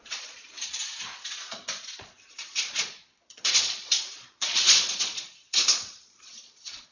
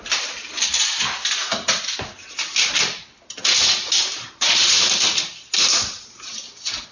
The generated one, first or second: first